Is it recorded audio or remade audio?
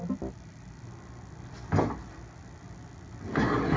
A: recorded